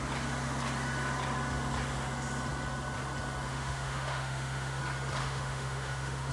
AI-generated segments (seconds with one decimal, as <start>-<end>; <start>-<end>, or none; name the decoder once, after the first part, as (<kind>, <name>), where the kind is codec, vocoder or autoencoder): 3.5-4.8 (autoencoder, DAC-VAE); 5.2-6.3